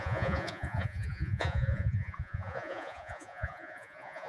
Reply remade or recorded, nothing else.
remade